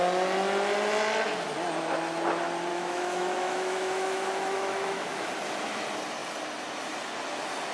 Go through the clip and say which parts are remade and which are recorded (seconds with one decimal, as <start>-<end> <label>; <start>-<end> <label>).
0.0-2.7 recorded; 2.7-5.3 remade; 5.3-7.7 recorded